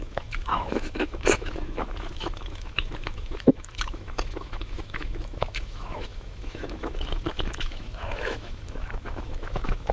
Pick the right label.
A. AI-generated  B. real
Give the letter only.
A